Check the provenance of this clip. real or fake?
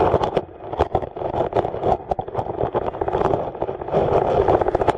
real